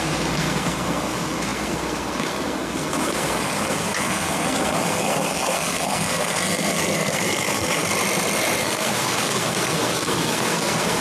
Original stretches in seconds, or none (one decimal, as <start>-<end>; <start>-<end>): 7.8-8.6

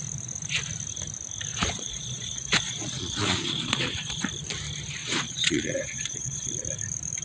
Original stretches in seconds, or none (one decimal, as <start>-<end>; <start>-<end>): 0.0-1.5; 4.2-5.0; 6.5-7.2

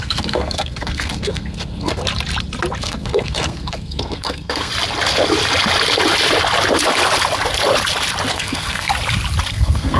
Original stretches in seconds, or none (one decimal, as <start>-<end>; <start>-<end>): 2.0-2.8; 4.7-8.3; 8.9-9.5

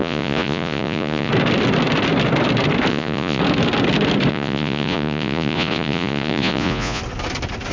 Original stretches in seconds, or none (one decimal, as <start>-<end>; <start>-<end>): 1.3-2.9; 3.4-4.3; 7.0-7.7

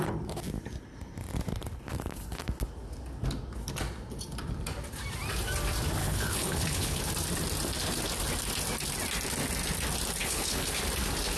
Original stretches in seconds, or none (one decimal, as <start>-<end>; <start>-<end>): 0.0-6.0; 7.0-10.2; 10.8-11.4

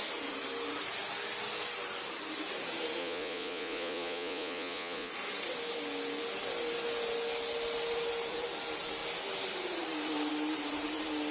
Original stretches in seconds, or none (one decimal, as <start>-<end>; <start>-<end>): 0.0-3.0; 5.1-11.3

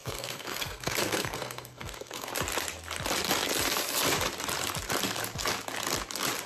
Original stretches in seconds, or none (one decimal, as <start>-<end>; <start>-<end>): 2.3-6.5